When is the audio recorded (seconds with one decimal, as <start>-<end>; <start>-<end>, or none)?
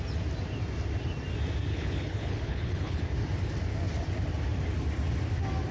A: 0.0-1.7; 3.0-5.7